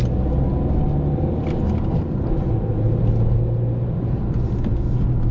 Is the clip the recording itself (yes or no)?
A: yes